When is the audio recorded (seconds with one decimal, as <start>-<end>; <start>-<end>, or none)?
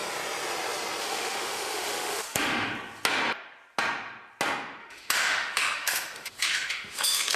0.0-1.0; 2.7-4.8